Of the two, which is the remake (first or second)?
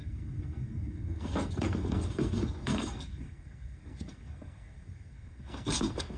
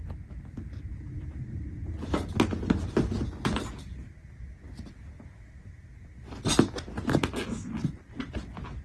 first